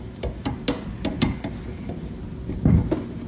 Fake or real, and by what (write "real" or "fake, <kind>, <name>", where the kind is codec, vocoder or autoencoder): real